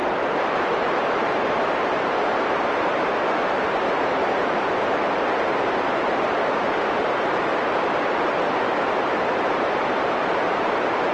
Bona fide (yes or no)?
no